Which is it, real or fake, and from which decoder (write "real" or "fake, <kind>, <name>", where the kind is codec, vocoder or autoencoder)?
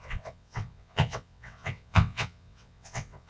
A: fake, vocoder, WaveNeXt